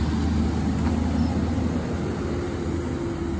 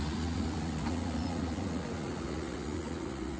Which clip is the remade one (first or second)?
second